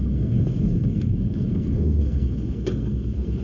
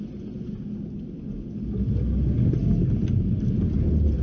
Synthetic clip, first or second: first